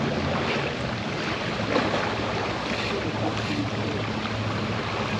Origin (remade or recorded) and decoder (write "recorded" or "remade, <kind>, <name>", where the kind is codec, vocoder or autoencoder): recorded